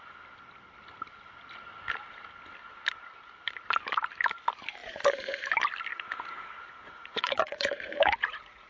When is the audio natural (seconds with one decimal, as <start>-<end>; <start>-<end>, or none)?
0.0-4.8; 5.5-5.9